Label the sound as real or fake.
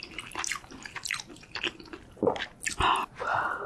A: real